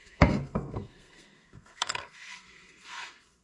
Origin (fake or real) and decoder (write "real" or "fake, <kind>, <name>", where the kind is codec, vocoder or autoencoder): fake, codec, SNAC